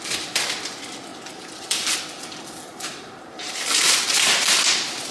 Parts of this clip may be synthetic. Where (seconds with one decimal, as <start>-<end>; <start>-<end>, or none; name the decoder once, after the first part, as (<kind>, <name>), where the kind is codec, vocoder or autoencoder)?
2.7-4.1 (vocoder, BigVGAN v2)